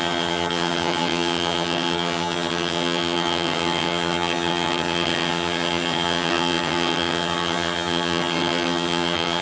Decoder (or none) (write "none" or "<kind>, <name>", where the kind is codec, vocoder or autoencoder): vocoder, HiFi-GAN